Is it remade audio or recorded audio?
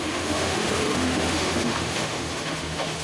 remade